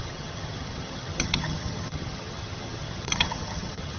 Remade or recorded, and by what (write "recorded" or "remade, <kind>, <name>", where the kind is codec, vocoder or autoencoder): remade, vocoder, HiFi-GAN